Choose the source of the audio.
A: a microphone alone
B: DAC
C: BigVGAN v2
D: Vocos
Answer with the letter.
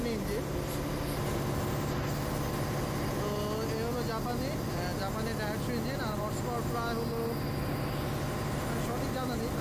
A